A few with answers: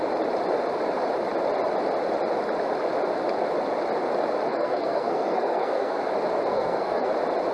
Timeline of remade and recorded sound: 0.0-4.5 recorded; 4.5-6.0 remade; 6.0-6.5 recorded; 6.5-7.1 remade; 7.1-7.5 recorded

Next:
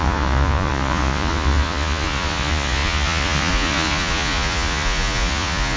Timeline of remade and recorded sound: 0.0-5.8 remade

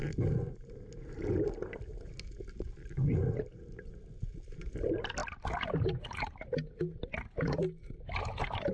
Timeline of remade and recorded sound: 0.0-8.7 recorded